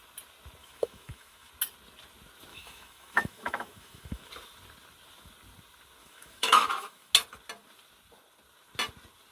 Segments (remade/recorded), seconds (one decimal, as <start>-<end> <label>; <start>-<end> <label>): 0.0-0.6 recorded; 0.6-1.5 remade; 1.5-2.5 recorded; 2.5-4.3 remade; 4.3-6.0 recorded; 6.0-7.1 remade; 7.1-9.3 recorded